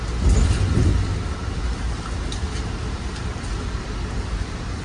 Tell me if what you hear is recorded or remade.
recorded